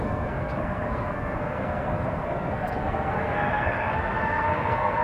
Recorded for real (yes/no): no